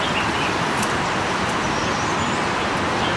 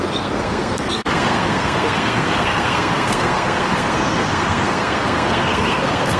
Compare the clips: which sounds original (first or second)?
first